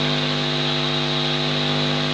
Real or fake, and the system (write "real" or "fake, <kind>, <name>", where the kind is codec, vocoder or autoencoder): real